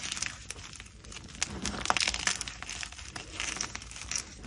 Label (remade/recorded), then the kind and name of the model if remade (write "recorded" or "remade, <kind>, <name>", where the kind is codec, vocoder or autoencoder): recorded